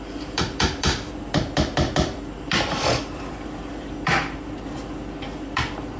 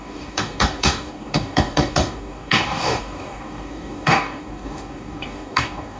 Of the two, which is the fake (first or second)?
second